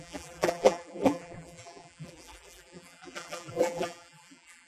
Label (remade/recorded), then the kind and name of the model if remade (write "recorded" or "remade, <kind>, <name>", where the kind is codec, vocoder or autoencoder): remade, vocoder, BigVGAN v2